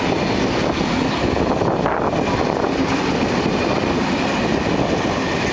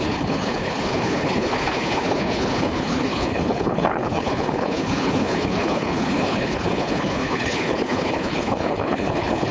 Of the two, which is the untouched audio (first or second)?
first